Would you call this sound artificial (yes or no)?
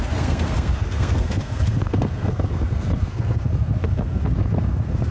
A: yes